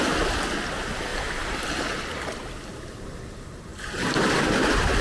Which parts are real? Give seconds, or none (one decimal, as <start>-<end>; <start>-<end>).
0.0-1.1; 1.8-5.0